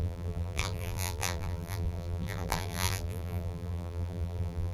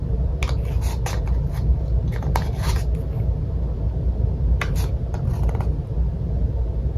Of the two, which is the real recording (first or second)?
second